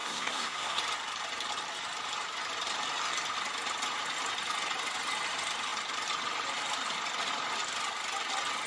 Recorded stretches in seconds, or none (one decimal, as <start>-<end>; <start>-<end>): 0.8-8.7